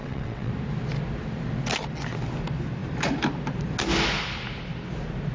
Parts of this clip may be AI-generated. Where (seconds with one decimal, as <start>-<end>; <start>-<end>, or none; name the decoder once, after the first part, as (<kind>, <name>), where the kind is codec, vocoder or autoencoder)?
0.0-0.5 (vocoder, WaveNeXt)